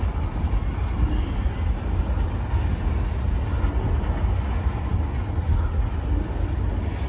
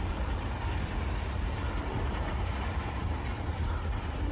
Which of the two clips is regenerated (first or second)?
second